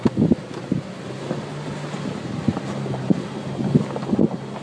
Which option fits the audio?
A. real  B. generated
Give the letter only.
A